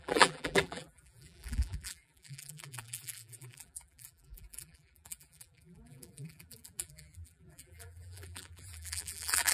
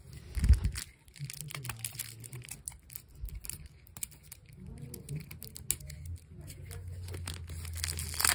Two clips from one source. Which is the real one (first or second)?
second